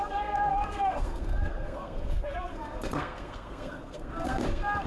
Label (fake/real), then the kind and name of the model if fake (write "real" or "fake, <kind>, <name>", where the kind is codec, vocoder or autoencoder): fake, codec, SNAC